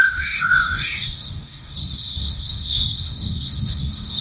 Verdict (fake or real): fake